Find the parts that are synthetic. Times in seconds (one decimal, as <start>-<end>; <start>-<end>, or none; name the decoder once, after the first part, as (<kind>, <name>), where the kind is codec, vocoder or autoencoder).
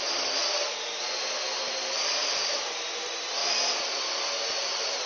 none